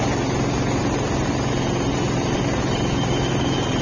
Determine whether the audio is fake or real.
real